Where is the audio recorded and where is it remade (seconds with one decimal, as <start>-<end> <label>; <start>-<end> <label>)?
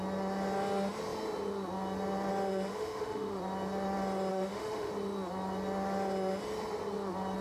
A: 0.0-2.7 recorded; 2.7-3.4 remade; 3.4-4.3 recorded; 4.3-4.9 remade; 4.9-7.4 recorded